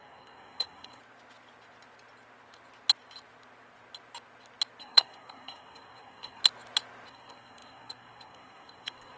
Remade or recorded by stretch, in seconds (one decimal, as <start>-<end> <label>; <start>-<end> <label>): 0.0-1.0 remade; 1.0-4.8 recorded; 4.8-6.4 remade; 6.4-7.1 recorded; 7.1-9.2 remade

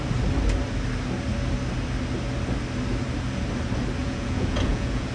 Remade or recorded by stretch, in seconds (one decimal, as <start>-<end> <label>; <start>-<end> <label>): 0.0-4.0 recorded; 4.0-5.1 remade

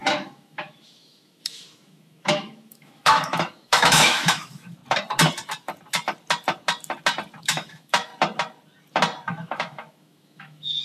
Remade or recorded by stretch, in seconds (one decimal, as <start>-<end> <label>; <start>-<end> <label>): 0.0-4.8 remade; 4.8-7.4 recorded; 7.4-8.1 remade; 8.1-9.3 recorded; 9.3-10.8 remade

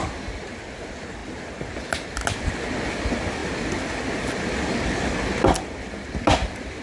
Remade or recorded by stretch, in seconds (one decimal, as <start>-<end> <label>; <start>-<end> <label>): 0.0-6.8 recorded

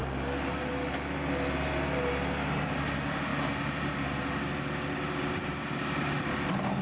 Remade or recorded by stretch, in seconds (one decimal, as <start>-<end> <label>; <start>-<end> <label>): 0.0-6.8 recorded

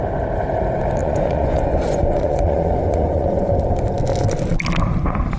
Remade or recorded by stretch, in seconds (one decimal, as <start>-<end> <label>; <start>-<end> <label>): 0.0-1.0 recorded; 1.0-3.5 remade; 3.5-5.4 recorded

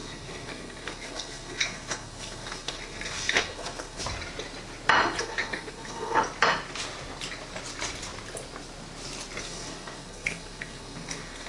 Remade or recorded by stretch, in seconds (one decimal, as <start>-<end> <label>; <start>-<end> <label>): 0.0-4.0 remade; 4.0-5.2 recorded; 5.2-6.2 remade; 6.2-9.4 recorded; 9.4-11.5 remade

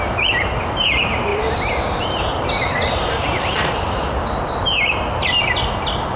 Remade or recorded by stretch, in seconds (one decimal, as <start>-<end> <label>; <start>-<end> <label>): 0.0-1.3 recorded; 1.3-5.0 remade; 5.0-6.2 recorded